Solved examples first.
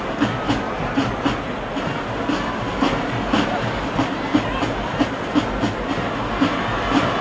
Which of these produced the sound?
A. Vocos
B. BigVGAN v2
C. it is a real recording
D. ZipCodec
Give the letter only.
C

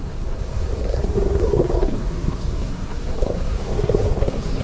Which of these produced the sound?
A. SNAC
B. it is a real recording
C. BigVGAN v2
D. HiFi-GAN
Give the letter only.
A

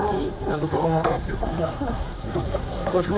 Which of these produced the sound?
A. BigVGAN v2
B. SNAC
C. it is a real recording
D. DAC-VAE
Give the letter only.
B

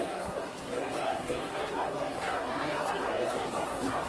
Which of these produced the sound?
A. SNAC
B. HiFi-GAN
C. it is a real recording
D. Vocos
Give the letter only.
A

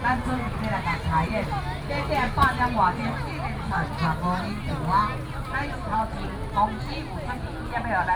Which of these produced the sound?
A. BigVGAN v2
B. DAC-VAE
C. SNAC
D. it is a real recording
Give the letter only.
D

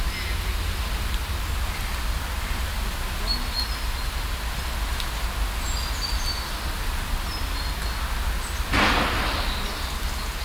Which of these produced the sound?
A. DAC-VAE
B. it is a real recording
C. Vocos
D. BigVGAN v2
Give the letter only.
B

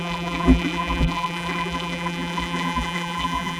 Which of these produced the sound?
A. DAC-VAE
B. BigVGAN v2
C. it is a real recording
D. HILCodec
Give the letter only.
B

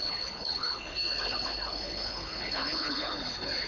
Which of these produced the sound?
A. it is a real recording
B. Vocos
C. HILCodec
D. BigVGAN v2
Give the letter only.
C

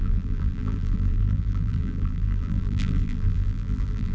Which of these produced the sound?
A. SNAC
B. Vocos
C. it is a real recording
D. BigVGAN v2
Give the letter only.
D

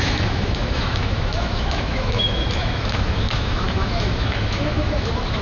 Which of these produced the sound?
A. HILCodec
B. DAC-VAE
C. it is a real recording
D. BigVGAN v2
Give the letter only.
B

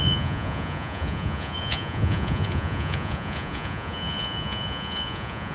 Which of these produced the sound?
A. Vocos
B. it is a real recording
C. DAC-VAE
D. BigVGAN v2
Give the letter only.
A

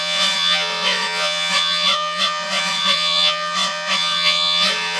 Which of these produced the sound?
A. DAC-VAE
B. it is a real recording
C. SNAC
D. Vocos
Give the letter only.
D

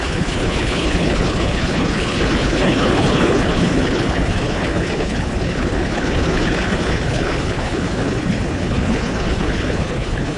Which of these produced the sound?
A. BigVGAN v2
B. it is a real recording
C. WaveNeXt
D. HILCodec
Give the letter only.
D